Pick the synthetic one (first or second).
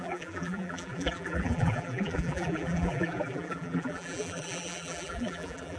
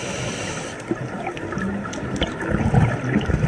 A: first